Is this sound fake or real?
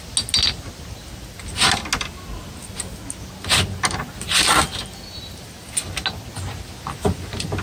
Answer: real